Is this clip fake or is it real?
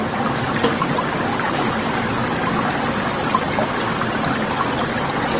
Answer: real